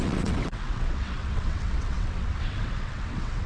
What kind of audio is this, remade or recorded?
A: remade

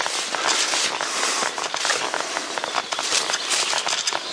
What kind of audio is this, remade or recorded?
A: recorded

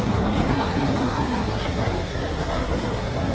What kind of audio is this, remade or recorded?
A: remade